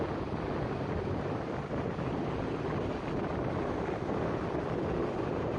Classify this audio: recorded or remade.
recorded